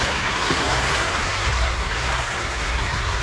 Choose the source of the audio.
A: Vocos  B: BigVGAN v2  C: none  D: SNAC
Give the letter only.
D